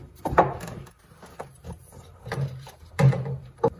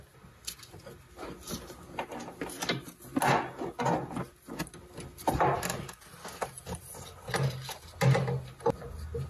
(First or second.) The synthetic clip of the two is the first